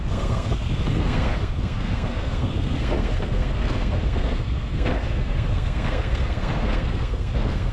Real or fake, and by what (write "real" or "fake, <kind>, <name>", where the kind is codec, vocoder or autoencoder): fake, codec, SNAC